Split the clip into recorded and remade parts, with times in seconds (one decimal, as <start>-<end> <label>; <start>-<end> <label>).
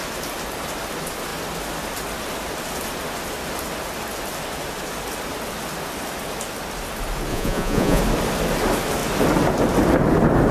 0.0-7.3 recorded; 7.3-8.0 remade; 8.0-10.5 recorded